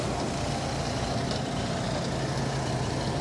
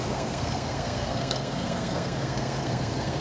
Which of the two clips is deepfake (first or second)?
second